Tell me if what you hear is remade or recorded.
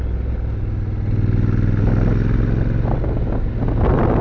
recorded